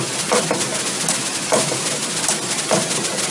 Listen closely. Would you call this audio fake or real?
real